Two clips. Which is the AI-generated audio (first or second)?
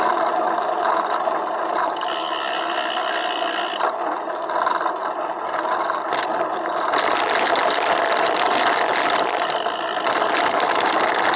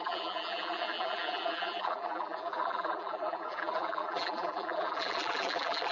second